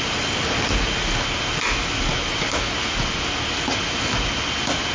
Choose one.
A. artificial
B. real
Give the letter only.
B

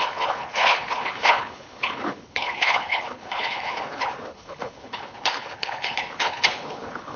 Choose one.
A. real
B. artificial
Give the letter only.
B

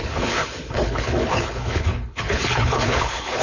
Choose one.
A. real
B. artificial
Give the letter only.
B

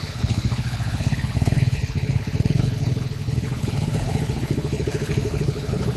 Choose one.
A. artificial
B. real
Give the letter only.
A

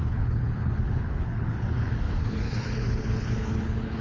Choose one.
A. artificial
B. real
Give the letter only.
A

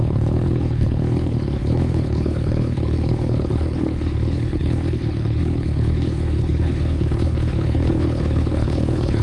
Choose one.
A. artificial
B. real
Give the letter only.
A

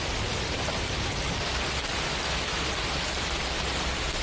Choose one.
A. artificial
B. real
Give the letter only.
B